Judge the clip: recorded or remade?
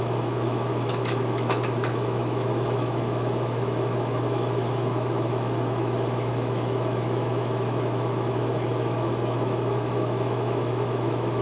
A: remade